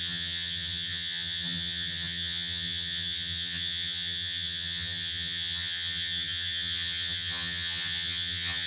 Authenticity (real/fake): fake